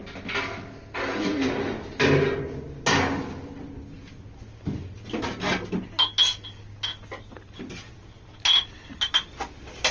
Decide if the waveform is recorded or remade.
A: recorded